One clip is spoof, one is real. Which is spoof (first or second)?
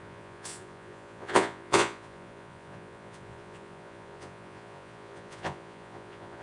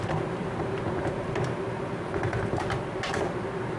first